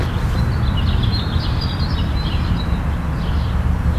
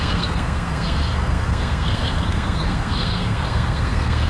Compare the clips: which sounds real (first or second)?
first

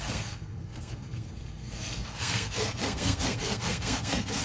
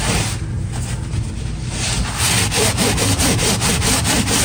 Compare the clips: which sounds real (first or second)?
second